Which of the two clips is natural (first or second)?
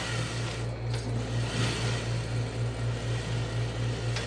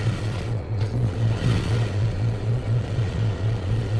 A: first